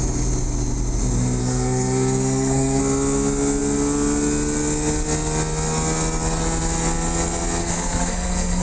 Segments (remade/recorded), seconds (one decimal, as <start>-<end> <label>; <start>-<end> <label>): 0.0-1.4 recorded; 1.4-2.8 remade; 2.8-7.6 recorded; 7.6-8.6 remade